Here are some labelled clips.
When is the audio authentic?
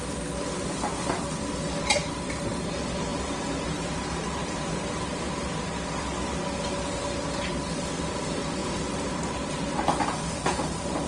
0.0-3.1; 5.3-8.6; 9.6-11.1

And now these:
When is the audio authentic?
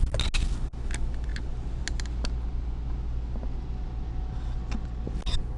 0.0-5.6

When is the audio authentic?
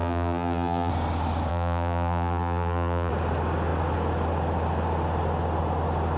0.9-1.5; 3.1-6.2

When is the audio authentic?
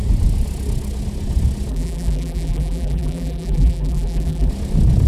0.0-1.7; 4.5-5.1